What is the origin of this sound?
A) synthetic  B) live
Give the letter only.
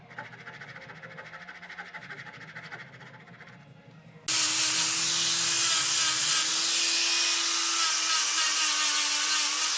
B